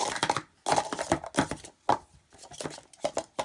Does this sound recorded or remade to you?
recorded